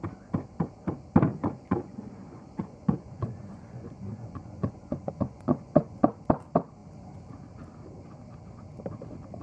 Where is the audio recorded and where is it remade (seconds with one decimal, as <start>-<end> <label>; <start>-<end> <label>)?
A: 0.0-1.3 recorded; 1.3-6.3 remade; 6.3-9.4 recorded